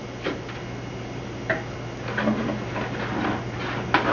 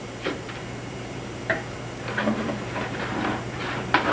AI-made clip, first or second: second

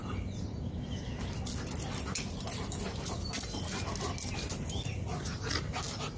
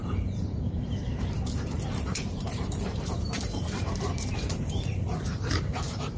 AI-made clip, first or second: second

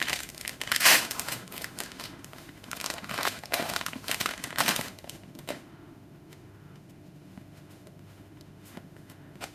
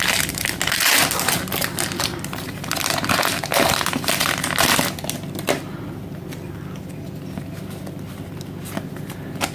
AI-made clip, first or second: first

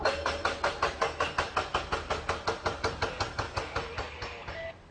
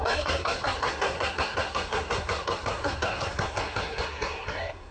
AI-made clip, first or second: second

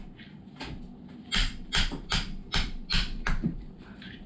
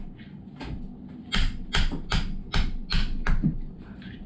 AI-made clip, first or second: first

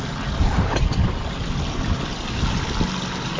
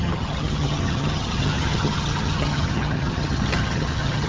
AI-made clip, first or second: second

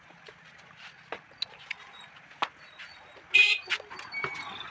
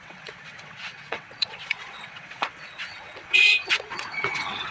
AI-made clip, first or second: second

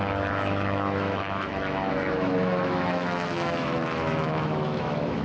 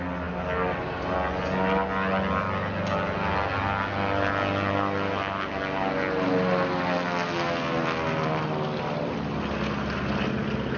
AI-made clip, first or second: first